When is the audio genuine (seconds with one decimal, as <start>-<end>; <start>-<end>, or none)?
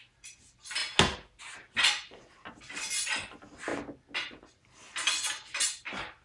0.0-6.2